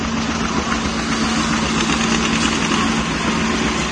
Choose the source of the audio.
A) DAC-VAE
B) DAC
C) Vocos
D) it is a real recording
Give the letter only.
D